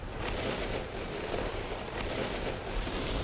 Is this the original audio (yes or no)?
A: yes